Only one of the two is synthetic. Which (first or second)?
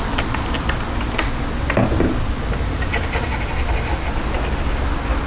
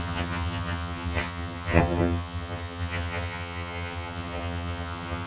second